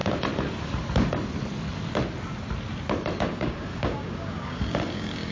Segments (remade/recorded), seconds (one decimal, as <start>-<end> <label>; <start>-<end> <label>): 0.0-3.2 recorded; 3.2-5.3 remade